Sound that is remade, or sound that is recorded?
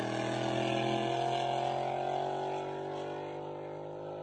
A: recorded